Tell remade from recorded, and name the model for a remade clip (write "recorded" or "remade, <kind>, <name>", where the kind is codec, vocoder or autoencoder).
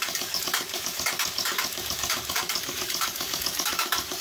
remade, codec, DAC